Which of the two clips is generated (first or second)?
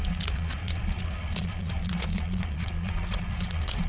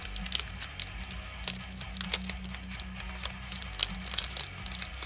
first